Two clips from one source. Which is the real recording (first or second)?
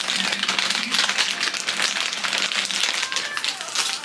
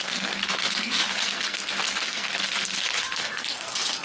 first